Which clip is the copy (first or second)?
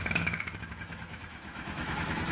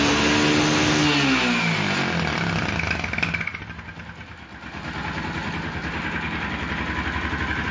first